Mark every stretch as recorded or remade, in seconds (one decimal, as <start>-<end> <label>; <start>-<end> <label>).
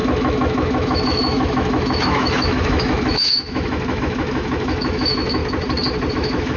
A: 0.0-5.4 remade; 5.4-6.1 recorded; 6.1-6.6 remade